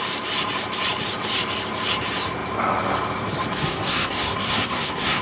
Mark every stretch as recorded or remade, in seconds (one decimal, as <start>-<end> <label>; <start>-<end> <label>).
0.0-3.6 recorded; 3.6-5.2 remade